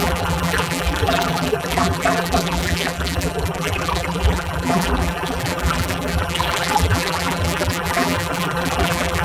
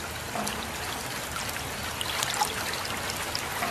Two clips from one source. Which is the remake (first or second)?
first